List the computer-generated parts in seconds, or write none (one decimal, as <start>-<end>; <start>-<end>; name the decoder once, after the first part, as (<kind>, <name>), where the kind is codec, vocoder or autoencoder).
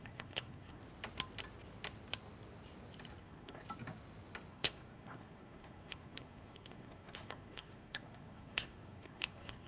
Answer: 0.0-0.8 (codec, SNAC); 3.2-3.6; 4.5-9.7